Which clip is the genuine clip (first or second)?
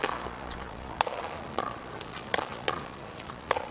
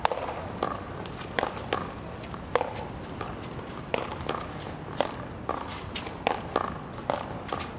second